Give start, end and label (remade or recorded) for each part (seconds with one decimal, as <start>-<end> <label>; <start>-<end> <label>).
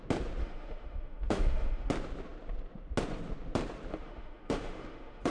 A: 0.0-0.4 recorded; 0.4-1.9 remade; 1.9-3.9 recorded; 3.9-5.3 remade